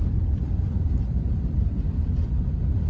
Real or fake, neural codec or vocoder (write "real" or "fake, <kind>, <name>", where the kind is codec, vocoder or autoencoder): fake, vocoder, BigVGAN v2